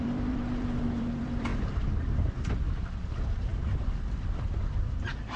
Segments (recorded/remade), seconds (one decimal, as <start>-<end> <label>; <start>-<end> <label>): 0.0-1.5 remade; 1.5-2.5 recorded; 2.5-5.4 remade